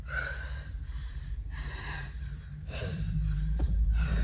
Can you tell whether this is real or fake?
fake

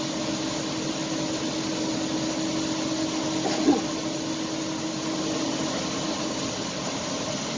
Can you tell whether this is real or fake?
real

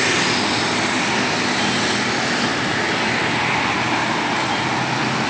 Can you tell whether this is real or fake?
real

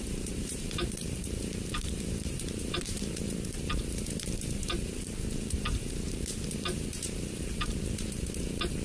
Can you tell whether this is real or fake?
fake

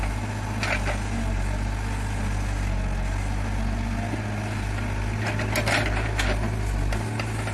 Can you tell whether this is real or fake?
real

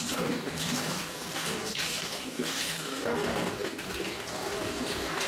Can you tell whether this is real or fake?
fake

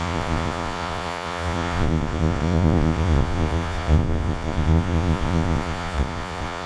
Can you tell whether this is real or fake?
fake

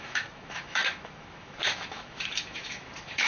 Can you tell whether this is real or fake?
fake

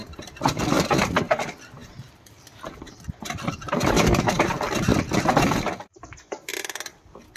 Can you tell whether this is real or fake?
fake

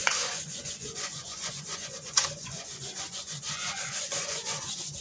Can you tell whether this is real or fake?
fake